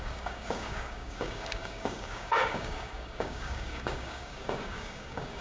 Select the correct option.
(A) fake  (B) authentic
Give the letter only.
A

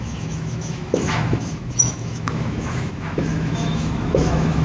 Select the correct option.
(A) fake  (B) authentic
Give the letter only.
A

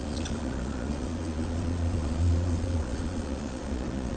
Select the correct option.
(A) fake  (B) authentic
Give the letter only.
A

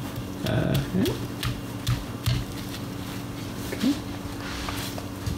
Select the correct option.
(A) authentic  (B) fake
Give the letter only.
A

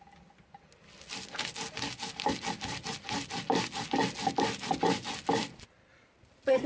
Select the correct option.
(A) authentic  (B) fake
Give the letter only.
A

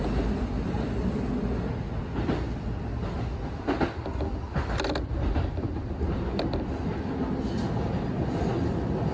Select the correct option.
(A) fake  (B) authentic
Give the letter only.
B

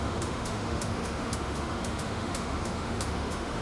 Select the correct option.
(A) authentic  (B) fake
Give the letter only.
B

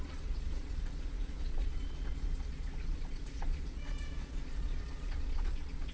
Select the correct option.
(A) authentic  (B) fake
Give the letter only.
B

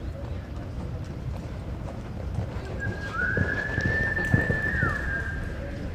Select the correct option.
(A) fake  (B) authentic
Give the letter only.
A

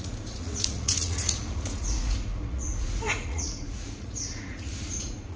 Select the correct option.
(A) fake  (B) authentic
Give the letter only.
A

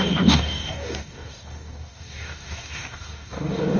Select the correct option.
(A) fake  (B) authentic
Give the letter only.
A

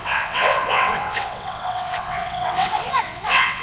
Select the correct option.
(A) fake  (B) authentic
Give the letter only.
A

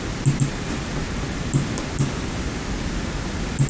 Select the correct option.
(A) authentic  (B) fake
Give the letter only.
A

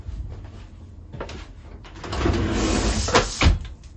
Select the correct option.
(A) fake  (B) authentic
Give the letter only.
B